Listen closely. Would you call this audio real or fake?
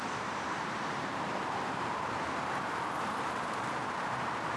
fake